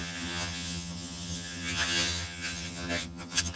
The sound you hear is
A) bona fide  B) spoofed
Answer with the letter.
B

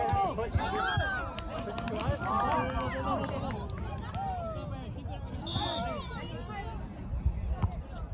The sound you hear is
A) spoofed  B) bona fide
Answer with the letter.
B